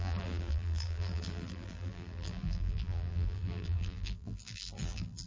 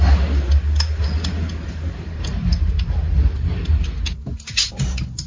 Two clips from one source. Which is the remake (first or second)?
first